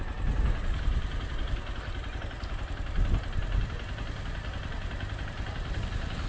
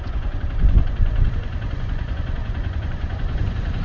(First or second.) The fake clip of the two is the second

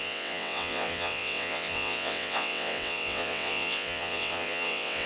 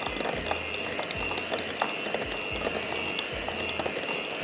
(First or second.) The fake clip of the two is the first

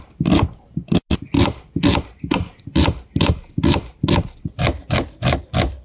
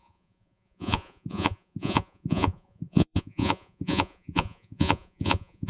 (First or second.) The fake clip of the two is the second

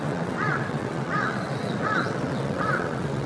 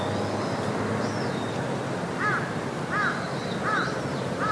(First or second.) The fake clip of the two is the first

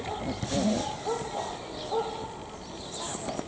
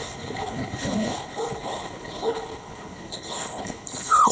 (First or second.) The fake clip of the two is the second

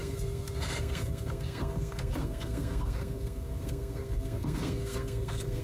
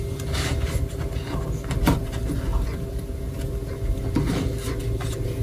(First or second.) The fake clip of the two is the first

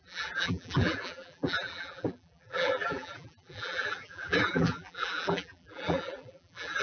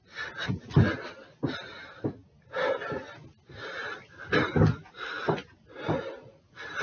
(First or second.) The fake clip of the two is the first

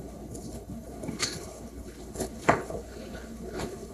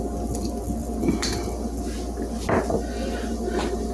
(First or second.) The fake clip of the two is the first